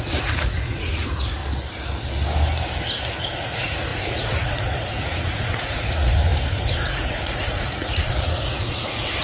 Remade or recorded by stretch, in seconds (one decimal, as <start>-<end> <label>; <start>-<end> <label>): 0.0-1.4 remade; 1.4-3.3 recorded; 3.3-9.2 remade